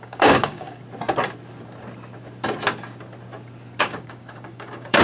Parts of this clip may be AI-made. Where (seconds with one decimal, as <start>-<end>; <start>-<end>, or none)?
0.0-0.8; 3.8-5.0